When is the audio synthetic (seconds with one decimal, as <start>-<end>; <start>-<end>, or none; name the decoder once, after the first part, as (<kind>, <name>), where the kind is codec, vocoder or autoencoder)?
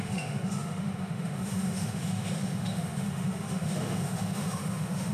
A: 0.0-5.1 (autoencoder, DAC-VAE)